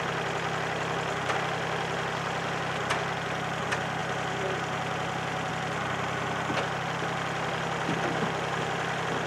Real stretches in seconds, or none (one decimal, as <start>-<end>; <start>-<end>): 0.0-9.3